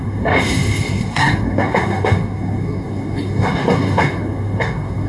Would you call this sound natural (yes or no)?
no